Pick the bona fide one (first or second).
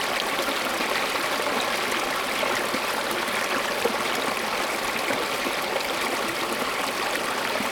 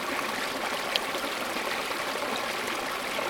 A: first